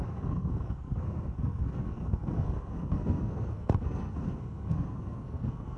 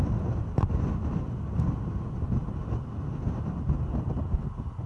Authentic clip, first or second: second